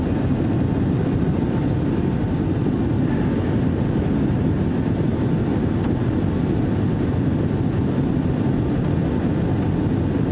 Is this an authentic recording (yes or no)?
yes